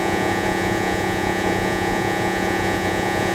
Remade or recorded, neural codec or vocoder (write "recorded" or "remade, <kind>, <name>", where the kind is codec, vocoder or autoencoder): remade, vocoder, Vocos